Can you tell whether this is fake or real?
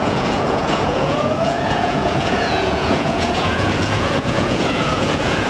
fake